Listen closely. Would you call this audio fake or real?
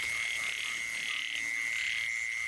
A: real